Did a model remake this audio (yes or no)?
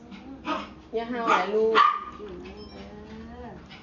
no